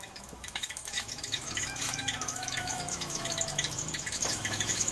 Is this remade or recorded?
remade